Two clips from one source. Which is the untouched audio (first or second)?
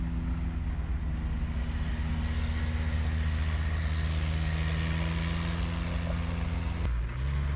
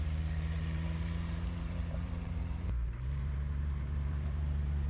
first